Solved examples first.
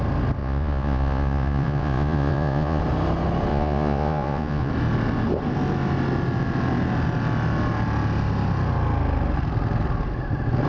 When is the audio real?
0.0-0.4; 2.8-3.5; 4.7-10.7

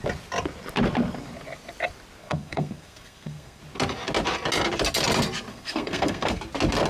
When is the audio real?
0.0-2.2; 3.6-5.5; 6.4-6.9

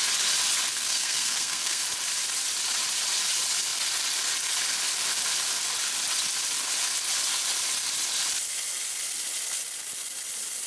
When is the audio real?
0.0-0.7; 1.8-10.7

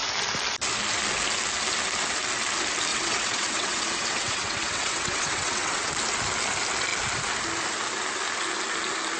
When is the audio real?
0.0-2.9; 5.9-9.2

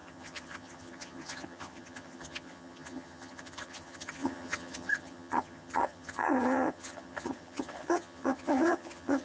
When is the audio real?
none

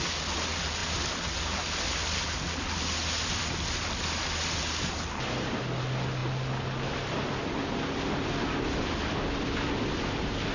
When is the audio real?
0.0-10.5

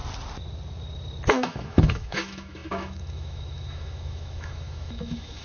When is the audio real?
0.0-1.3

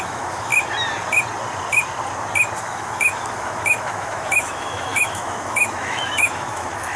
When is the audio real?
0.5-2.6